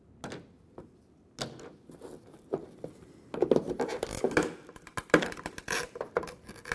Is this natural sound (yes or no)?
yes